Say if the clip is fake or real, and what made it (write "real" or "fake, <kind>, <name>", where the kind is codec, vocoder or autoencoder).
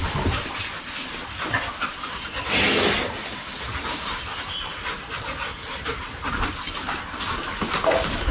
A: real